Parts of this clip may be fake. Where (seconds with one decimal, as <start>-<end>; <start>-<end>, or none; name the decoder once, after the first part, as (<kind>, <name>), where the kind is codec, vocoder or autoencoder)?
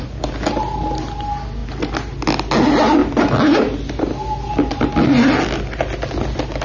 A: none